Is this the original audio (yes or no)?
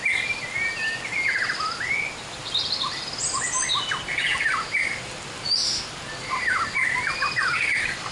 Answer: yes